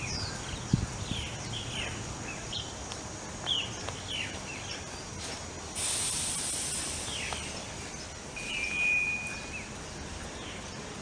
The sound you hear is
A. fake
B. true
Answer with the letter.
B